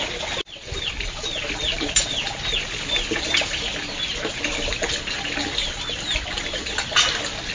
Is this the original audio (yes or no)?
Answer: yes